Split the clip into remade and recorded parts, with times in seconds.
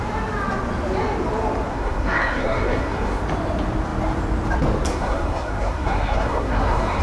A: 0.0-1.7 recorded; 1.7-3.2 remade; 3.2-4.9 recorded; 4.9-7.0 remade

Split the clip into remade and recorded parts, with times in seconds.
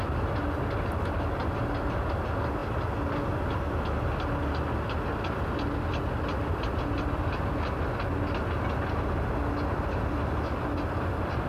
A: 0.0-11.5 recorded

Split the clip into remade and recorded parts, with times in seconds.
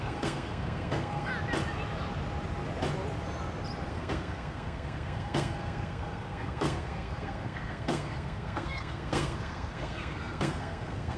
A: 0.0-1.3 remade; 1.3-3.9 recorded; 3.9-11.2 remade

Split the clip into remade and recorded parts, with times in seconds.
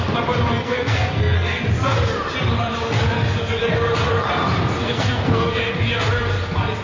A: 0.0-0.6 recorded; 0.6-1.6 remade; 1.6-4.8 recorded; 4.8-5.7 remade; 5.7-6.8 recorded